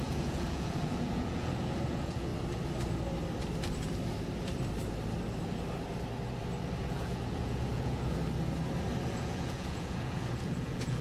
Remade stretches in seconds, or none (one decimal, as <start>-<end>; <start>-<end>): 0.0-2.3; 6.9-8.2; 9.1-11.0